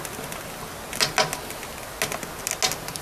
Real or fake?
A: real